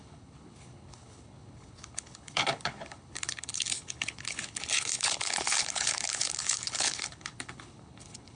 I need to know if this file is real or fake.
fake